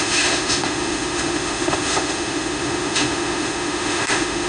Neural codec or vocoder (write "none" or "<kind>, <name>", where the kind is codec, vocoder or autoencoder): autoencoder, DAC-VAE